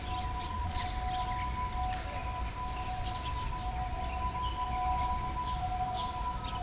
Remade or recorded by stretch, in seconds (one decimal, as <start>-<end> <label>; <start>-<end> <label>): 0.0-0.4 recorded; 0.4-0.9 remade; 0.9-6.6 recorded